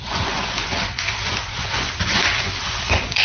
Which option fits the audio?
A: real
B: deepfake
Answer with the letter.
B